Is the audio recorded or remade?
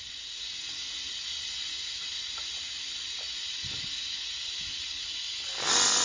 recorded